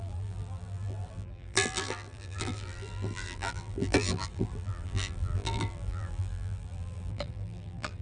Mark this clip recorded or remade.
remade